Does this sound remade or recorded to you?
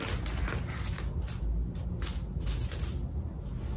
recorded